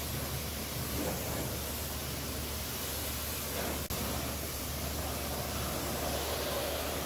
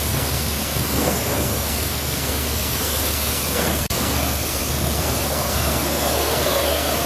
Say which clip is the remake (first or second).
second